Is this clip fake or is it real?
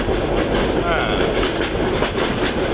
real